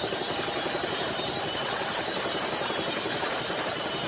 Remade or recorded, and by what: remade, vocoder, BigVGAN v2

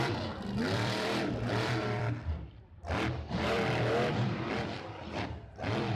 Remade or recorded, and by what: remade, vocoder, BigVGAN v2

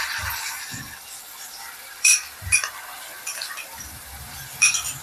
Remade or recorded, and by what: remade, vocoder, BigVGAN v2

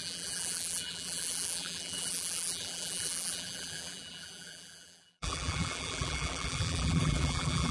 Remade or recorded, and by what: remade, vocoder, BigVGAN v2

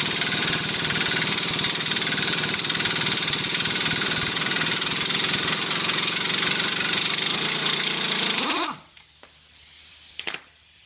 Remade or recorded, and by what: remade, vocoder, BigVGAN v2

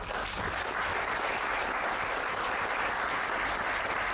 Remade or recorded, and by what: recorded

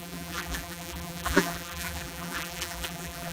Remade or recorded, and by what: remade, vocoder, BigVGAN v2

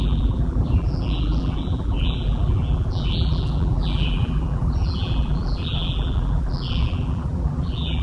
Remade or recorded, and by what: remade, vocoder, BigVGAN v2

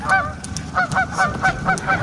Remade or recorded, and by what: recorded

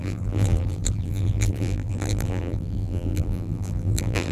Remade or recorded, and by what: remade, vocoder, BigVGAN v2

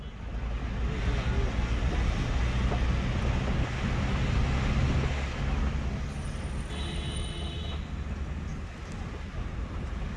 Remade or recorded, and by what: recorded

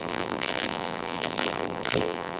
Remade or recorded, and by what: remade, vocoder, BigVGAN v2